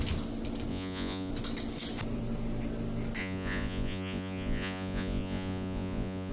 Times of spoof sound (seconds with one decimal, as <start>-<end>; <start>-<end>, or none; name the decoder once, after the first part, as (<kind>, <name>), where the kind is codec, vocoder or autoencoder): 0.7-1.3 (vocoder, Vocos); 3.2-6.3